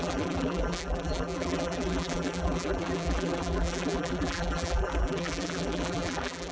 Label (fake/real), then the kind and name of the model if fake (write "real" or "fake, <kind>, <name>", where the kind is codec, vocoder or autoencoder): fake, vocoder, BigVGAN v2